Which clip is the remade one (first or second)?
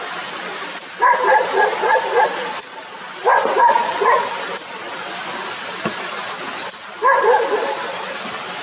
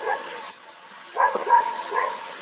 second